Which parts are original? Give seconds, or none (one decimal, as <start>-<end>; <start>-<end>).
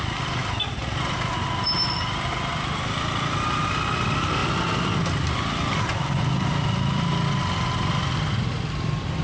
0.0-9.2